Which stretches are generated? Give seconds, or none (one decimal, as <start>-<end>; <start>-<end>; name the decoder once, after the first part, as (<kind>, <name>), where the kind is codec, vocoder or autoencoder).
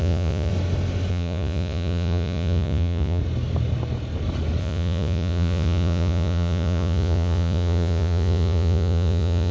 0.0-0.5 (vocoder, Vocos); 1.1-3.2; 4.6-9.5